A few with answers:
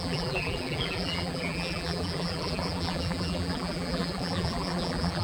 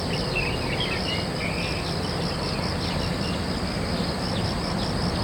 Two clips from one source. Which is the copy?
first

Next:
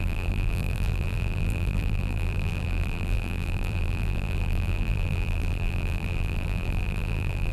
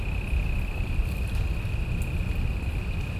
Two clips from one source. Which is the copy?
first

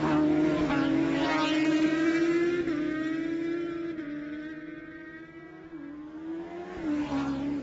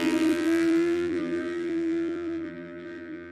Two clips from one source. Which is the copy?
second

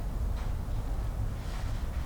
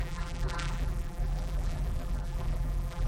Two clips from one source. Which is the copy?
second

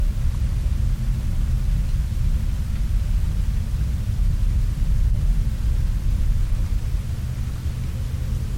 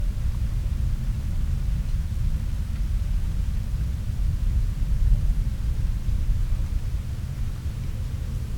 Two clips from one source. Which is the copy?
second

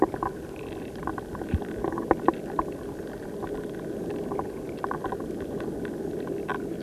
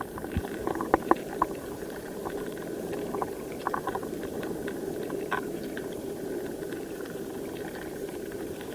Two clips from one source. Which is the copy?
second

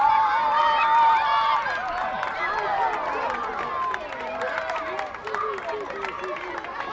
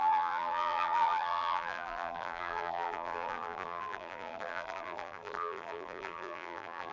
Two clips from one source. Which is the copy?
second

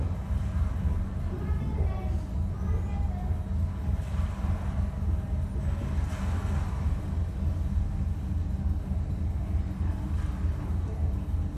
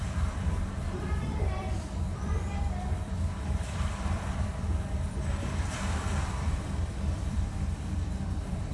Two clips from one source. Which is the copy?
second